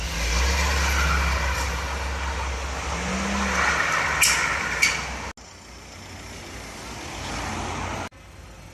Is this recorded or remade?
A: recorded